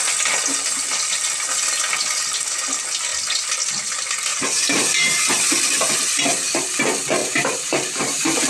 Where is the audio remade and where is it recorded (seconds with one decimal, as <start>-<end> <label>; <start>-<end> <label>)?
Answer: 0.0-4.3 recorded; 4.3-5.5 remade; 5.5-7.2 recorded; 7.2-8.5 remade